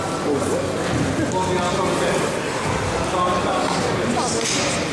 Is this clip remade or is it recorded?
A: recorded